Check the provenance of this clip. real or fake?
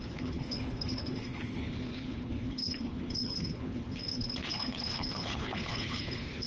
fake